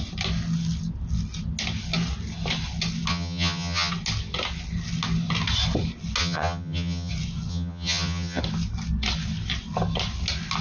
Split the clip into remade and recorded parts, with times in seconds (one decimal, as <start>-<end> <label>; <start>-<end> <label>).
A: 0.0-3.1 recorded; 3.1-3.9 remade; 3.9-6.2 recorded; 6.2-7.1 remade; 7.1-7.5 recorded; 7.5-8.4 remade; 8.4-10.6 recorded